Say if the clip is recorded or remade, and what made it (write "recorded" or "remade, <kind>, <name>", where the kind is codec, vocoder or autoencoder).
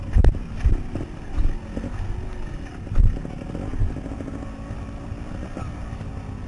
recorded